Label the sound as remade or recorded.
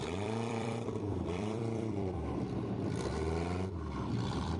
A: remade